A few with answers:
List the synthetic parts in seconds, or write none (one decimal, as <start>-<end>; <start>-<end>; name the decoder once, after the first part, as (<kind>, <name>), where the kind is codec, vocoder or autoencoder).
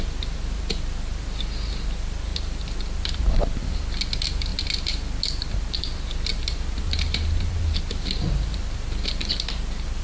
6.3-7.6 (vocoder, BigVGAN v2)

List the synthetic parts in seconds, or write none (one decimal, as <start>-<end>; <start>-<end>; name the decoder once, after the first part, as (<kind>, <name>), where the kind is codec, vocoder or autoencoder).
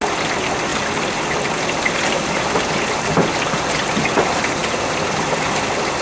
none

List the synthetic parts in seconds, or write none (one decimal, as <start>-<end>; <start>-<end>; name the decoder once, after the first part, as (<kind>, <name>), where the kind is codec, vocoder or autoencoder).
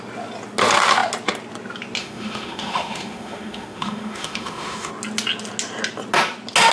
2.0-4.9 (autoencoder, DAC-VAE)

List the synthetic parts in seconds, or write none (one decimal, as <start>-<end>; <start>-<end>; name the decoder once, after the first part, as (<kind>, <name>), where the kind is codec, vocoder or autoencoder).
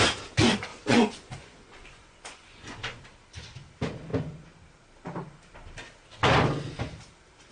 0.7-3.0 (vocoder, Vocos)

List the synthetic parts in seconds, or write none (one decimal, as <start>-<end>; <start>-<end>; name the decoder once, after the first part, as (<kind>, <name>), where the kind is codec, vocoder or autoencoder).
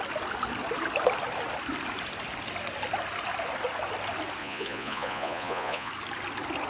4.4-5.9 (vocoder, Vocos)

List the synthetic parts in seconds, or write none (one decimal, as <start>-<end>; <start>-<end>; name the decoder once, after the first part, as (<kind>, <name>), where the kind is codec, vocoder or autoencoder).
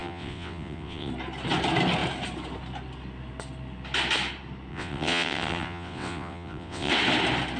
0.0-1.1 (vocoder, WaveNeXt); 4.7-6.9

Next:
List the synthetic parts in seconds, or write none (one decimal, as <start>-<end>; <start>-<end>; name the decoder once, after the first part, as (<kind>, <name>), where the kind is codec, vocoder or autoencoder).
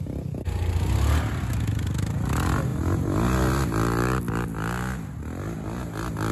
none